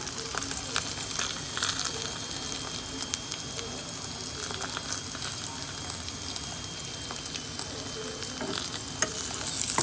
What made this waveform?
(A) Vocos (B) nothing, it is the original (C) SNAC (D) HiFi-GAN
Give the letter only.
B